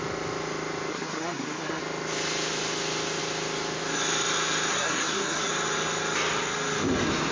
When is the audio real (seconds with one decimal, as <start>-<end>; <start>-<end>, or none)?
0.0-0.9; 1.8-4.7; 5.5-7.3

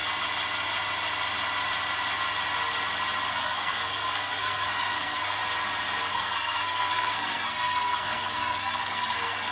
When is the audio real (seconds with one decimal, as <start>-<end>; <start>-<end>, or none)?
0.0-3.3; 5.4-6.1